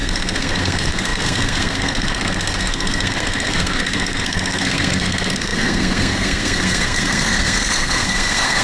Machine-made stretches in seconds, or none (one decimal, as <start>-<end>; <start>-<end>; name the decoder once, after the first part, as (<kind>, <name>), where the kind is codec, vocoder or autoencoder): 0.0-8.6 (codec, SNAC)